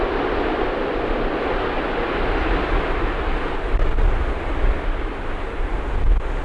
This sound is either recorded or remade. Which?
recorded